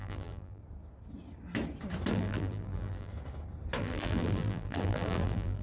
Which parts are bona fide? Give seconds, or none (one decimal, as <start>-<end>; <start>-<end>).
0.6-2.1; 3.1-3.8